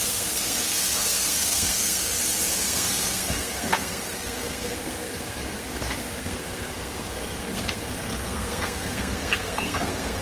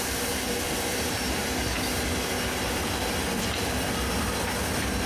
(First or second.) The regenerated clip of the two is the first